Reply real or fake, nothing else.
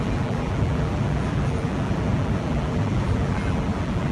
fake